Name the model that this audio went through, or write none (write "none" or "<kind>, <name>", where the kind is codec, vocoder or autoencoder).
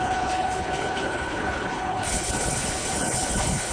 codec, HILCodec